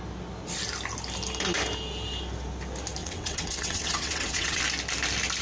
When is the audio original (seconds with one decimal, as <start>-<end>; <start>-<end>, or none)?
0.0-3.0; 4.6-5.4